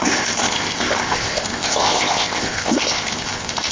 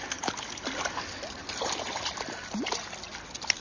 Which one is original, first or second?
second